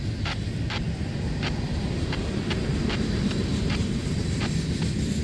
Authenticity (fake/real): real